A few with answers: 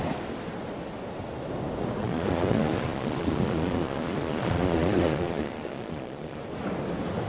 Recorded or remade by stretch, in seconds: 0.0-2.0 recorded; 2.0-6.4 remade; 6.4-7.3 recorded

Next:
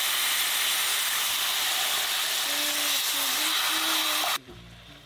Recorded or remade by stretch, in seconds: 0.0-5.1 recorded

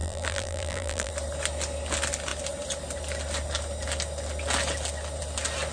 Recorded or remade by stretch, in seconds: 0.0-1.1 remade; 1.1-5.7 recorded